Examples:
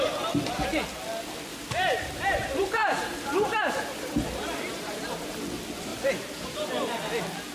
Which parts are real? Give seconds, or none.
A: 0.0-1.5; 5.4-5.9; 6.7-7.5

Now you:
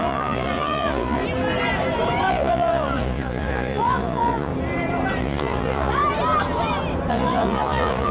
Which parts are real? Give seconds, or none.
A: 1.2-2.3; 4.5-5.2; 6.0-7.1

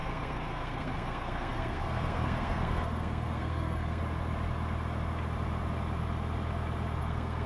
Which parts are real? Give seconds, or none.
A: 4.0-7.0

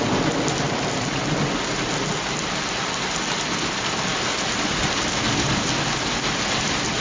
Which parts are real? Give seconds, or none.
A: 0.0-7.0

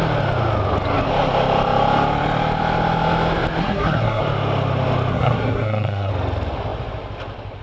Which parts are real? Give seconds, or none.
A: 0.0-3.6; 4.2-5.1; 6.1-7.6